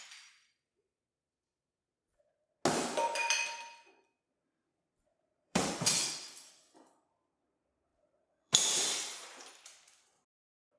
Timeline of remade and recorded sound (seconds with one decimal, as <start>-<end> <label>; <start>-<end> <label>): 0.0-5.1 recorded; 5.1-5.7 remade; 5.7-7.9 recorded; 7.9-10.4 remade; 10.4-10.8 recorded